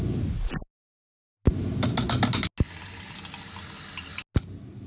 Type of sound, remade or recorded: recorded